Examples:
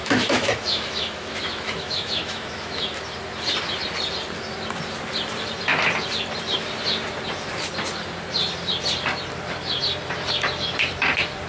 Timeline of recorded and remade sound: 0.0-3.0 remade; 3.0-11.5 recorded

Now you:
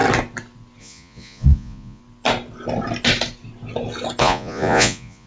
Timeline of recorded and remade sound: 0.0-0.8 recorded; 0.8-2.0 remade; 2.0-4.2 recorded; 4.2-5.3 remade

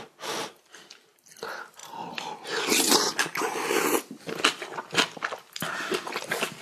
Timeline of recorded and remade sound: 0.0-6.6 recorded